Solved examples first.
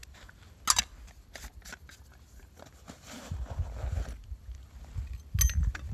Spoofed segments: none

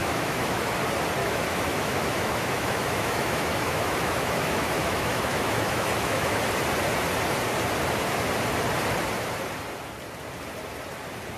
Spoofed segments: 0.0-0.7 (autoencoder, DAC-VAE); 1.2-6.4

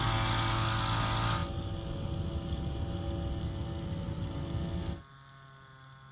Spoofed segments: none